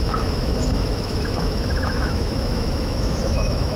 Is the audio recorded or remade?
remade